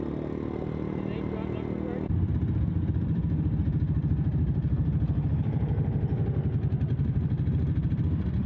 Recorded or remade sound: recorded